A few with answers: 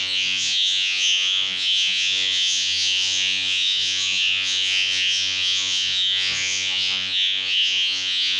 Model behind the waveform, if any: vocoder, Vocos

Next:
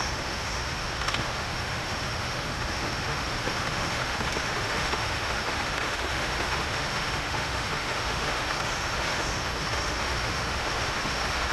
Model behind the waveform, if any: autoencoder, DAC-VAE